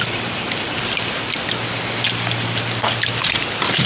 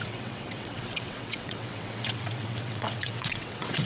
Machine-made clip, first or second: second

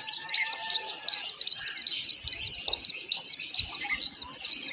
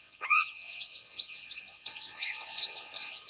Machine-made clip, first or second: second